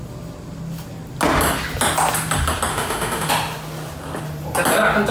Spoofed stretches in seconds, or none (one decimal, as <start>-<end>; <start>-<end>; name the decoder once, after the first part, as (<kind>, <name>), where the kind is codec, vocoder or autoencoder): 2.7-3.3 (autoencoder, DAC-VAE)